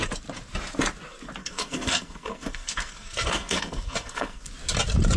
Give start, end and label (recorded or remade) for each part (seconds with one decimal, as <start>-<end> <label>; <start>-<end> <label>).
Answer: 0.0-1.4 recorded; 1.4-4.5 remade; 4.5-5.2 recorded